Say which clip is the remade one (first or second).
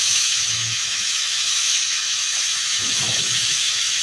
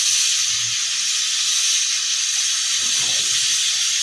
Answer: first